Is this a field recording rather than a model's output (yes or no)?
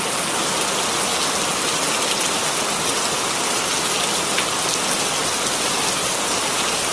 yes